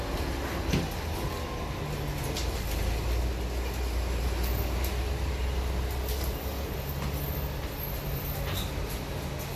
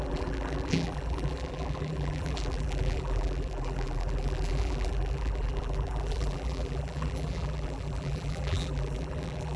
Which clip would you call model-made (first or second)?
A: second